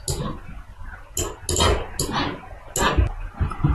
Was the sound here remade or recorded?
recorded